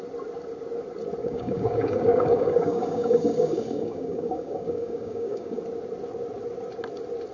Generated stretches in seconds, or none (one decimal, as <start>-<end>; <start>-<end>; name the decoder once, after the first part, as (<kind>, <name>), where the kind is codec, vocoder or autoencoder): 1.2-5.6 (codec, DAC)